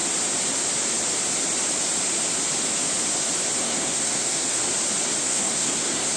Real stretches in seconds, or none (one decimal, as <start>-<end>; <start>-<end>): 0.0-3.6; 4.6-5.2